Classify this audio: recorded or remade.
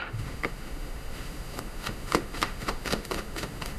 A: remade